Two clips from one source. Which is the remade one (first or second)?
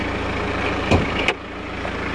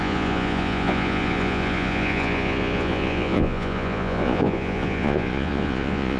second